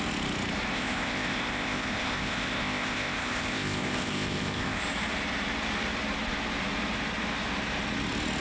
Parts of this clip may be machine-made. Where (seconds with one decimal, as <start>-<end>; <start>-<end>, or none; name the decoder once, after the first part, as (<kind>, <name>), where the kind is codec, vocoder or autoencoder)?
0.7-4.8 (codec, ZipCodec)